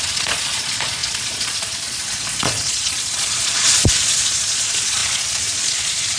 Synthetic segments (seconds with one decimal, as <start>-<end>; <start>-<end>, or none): 0.0-6.2